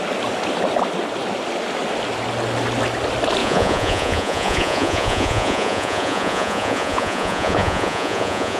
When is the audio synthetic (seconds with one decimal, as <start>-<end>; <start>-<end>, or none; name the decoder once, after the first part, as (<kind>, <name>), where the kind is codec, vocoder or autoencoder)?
3.4-8.6 (vocoder, Vocos)